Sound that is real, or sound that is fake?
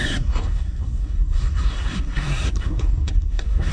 fake